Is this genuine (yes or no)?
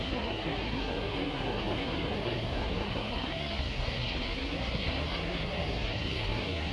no